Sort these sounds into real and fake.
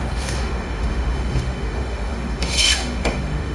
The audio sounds fake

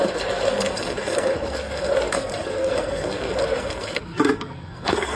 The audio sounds fake